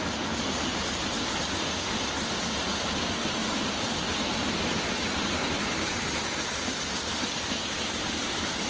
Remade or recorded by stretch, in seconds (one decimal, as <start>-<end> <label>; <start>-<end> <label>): 0.0-8.7 recorded